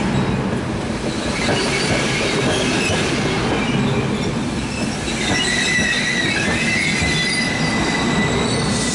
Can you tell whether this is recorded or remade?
recorded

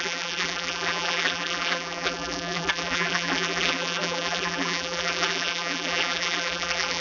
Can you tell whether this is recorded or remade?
remade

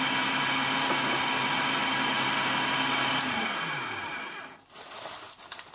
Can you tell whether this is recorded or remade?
recorded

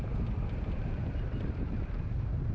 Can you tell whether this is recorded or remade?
remade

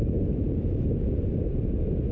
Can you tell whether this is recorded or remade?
recorded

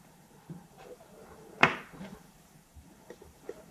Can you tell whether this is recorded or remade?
remade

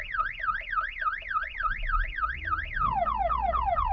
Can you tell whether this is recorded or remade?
recorded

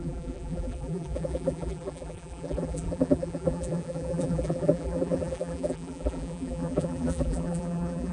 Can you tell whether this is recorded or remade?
remade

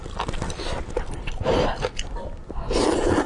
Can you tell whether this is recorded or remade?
remade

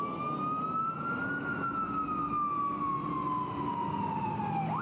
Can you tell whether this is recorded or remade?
recorded